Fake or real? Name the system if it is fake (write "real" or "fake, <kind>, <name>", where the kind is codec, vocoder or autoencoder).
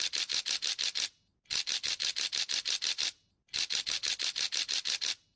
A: real